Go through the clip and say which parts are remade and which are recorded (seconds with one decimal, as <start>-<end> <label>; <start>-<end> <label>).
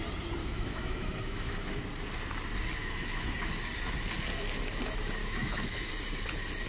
0.0-0.4 recorded; 0.4-1.8 remade; 1.8-2.8 recorded; 2.8-3.4 remade; 3.4-5.2 recorded; 5.2-5.9 remade; 5.9-6.7 recorded